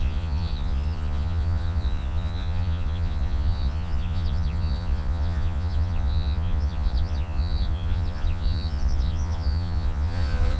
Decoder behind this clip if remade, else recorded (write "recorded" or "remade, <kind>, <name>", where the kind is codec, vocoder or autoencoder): remade, vocoder, Vocos